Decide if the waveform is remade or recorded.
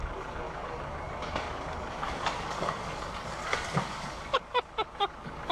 remade